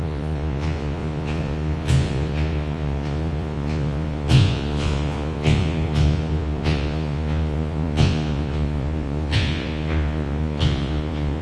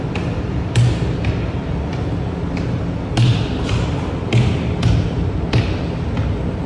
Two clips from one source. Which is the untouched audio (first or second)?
second